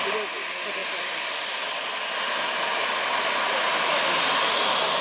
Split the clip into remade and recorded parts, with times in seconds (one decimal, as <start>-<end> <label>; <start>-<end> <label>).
0.0-0.8 recorded; 0.8-2.1 remade; 2.1-2.8 recorded; 2.8-5.0 remade